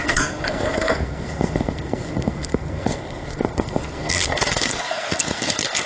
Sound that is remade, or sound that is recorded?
remade